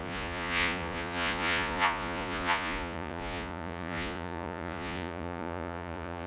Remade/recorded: remade